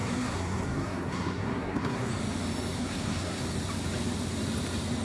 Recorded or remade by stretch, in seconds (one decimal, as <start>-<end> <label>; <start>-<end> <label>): 0.0-2.1 remade; 2.1-2.8 recorded; 2.8-3.4 remade; 3.4-5.0 recorded